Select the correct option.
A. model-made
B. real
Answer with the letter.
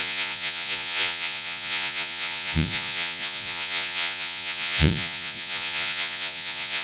A